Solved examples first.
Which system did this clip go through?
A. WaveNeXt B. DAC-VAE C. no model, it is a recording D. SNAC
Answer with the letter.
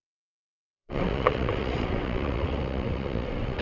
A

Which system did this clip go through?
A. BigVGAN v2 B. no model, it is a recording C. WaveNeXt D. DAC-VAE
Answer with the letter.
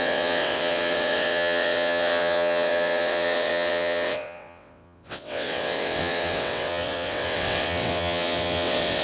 C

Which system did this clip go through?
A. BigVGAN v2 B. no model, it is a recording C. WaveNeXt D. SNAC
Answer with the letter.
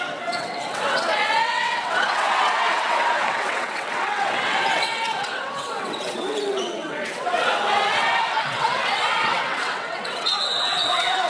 C